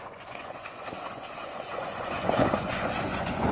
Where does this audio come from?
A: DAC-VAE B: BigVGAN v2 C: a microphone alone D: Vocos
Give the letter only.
D